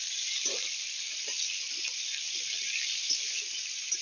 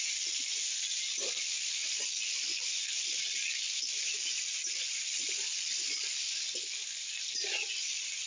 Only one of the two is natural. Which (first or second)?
second